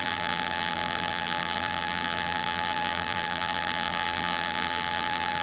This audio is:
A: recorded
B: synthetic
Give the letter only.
B